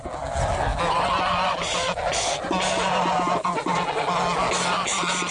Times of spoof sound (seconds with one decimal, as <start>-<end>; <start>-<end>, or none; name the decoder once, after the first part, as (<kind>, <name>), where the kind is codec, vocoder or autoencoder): none